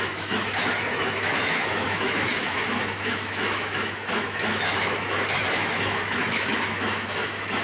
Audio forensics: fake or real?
fake